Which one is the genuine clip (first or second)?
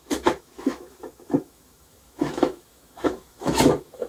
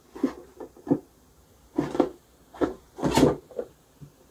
second